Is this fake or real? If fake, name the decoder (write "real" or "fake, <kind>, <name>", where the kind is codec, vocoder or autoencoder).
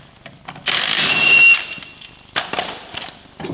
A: real